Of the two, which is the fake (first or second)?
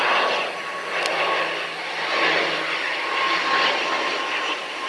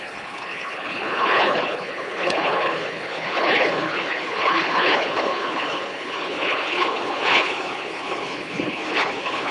second